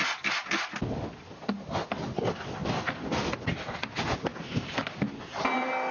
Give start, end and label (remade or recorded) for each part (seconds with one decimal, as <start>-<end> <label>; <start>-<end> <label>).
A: 0.0-5.9 recorded